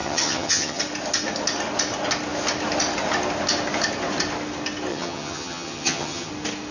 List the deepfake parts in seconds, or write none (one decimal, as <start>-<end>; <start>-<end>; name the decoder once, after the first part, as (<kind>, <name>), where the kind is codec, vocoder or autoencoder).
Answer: 0.0-0.8 (vocoder, HiFi-GAN); 4.9-6.3